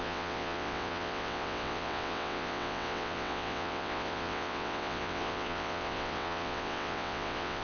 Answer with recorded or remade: remade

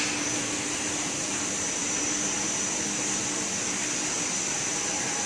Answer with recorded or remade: remade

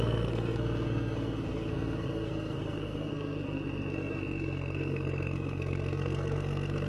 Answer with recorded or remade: remade